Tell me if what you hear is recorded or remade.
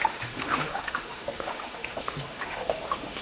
remade